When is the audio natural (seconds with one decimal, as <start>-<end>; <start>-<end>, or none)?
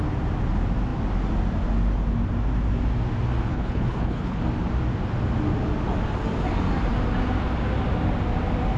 0.0-3.5; 4.4-8.8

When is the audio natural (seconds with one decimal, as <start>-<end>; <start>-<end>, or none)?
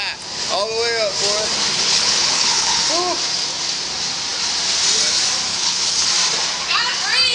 0.0-1.7; 2.8-5.5; 6.1-7.3